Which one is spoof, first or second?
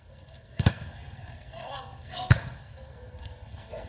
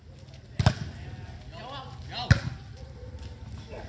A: first